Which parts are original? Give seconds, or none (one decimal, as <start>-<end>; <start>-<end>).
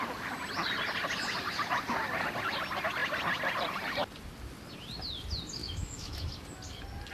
0.0-5.6; 6.3-7.1